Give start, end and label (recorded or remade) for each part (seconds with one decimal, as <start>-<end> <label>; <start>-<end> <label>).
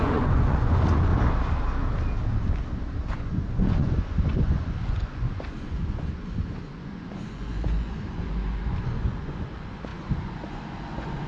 0.0-1.1 remade; 1.1-3.1 recorded; 3.1-11.3 remade